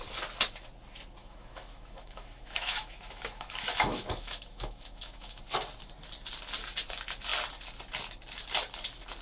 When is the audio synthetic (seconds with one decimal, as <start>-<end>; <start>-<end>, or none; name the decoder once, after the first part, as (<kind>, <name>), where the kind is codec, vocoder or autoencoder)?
1.2-5.4 (autoencoder, DAC-VAE)